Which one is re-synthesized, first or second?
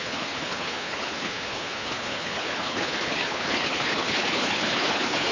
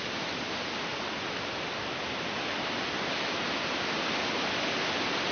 first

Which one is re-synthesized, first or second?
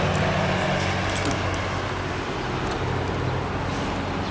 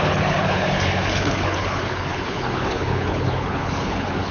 second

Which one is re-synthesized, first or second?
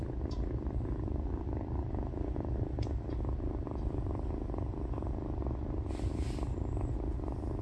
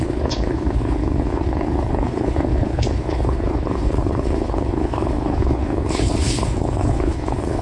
second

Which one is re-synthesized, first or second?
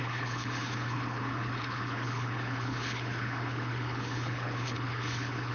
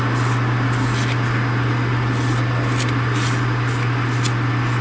first